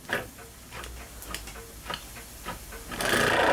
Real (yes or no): yes